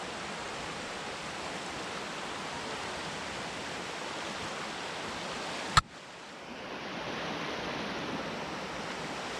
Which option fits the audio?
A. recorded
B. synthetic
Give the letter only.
A